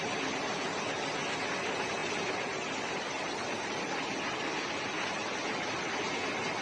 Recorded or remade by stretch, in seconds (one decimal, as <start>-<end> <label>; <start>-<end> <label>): 0.0-2.0 recorded; 2.0-3.8 remade; 3.8-6.6 recorded